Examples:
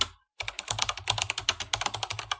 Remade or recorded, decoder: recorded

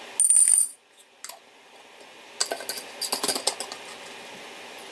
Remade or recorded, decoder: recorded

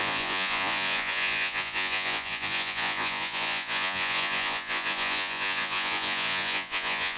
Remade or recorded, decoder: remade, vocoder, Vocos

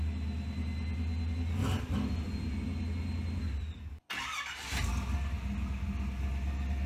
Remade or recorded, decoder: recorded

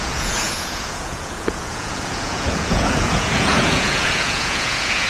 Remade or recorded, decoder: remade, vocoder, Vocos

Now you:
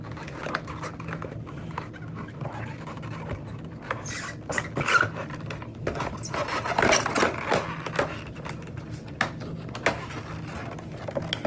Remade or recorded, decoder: recorded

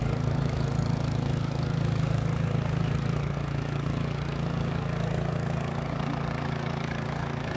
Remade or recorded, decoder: remade, codec, DAC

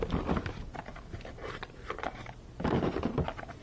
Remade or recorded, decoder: recorded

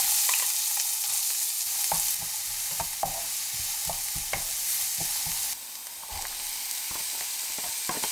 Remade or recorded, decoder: recorded